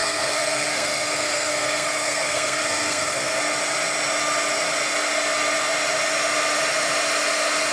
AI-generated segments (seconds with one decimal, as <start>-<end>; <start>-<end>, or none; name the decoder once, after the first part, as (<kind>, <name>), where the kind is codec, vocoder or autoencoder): 0.0-3.4 (codec, SNAC)